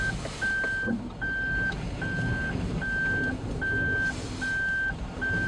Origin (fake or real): real